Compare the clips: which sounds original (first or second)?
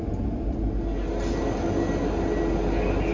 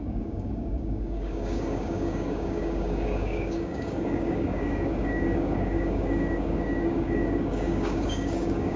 first